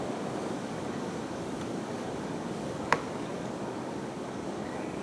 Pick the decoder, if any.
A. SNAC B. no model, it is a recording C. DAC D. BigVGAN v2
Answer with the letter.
C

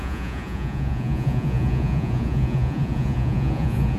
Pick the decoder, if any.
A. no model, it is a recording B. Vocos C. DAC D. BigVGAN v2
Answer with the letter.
B